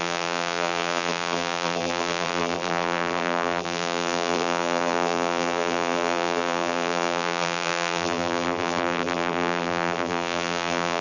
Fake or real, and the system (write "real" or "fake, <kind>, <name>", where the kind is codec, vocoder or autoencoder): fake, vocoder, BigVGAN v2